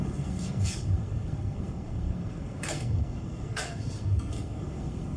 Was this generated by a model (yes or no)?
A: yes